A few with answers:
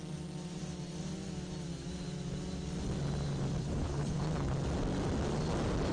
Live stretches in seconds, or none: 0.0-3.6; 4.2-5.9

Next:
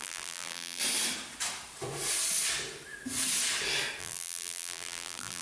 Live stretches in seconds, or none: 0.8-4.0

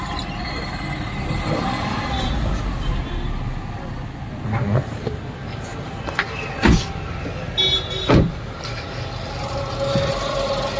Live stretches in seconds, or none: 0.0-10.8

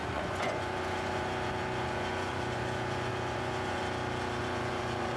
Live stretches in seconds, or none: 3.8-4.4

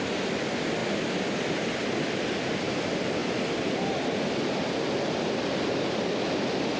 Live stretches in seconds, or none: 0.0-6.8

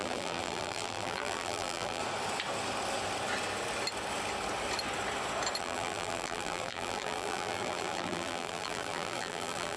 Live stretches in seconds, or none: 2.0-5.6

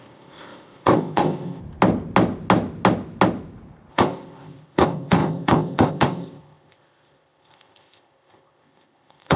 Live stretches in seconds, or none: 1.6-3.9

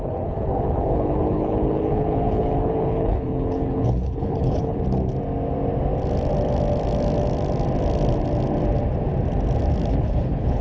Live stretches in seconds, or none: 4.8-9.9